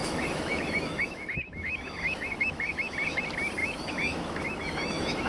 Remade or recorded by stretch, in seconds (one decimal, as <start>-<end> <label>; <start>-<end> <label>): 0.0-3.2 remade; 3.2-3.6 recorded; 3.6-5.3 remade